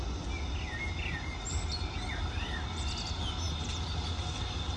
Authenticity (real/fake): real